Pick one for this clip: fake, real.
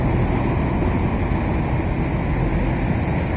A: real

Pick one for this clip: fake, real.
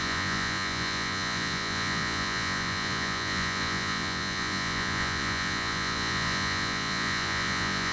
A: fake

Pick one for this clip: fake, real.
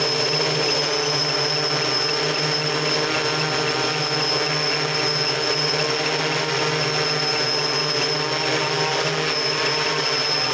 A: real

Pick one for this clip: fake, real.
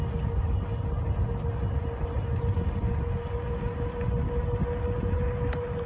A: real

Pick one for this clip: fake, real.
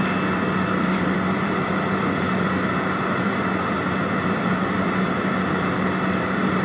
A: fake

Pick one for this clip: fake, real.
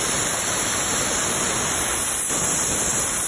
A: real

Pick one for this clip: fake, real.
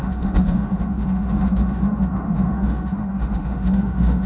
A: fake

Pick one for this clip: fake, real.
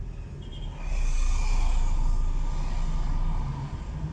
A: real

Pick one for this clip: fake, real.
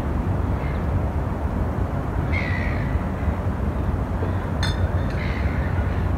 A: real